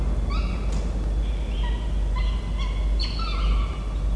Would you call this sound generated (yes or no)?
no